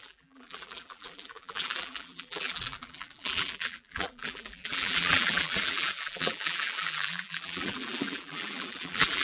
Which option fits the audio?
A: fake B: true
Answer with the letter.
A